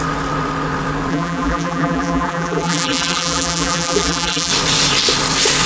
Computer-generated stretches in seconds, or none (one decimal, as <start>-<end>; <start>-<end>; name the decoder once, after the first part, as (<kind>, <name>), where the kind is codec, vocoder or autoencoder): 1.1-4.5 (vocoder, BigVGAN v2)